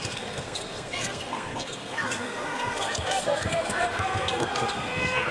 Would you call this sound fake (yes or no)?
yes